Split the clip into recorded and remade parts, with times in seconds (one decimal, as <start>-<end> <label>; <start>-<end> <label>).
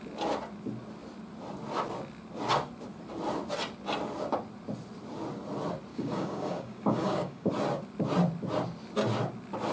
0.0-5.9 recorded; 5.9-7.5 remade; 7.5-9.7 recorded